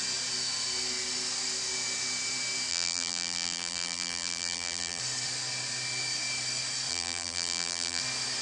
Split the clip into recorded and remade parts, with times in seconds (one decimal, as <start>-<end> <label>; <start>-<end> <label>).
0.0-2.7 recorded; 2.7-5.0 remade; 5.0-6.9 recorded; 6.9-8.0 remade; 8.0-8.4 recorded